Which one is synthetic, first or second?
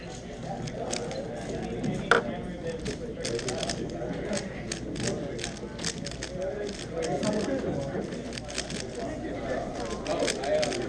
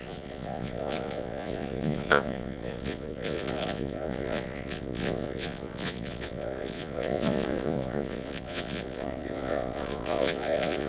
second